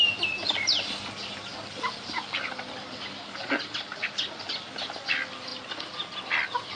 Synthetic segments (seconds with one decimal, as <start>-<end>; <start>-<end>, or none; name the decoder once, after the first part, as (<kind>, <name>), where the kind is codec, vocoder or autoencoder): none